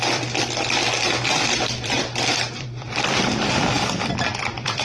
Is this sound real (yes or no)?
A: no